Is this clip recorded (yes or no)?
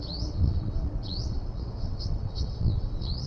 no